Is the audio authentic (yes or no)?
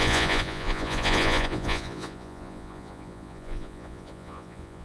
no